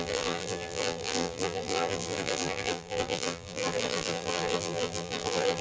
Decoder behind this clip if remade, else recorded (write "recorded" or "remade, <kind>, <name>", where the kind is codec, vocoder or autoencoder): remade, vocoder, BigVGAN v2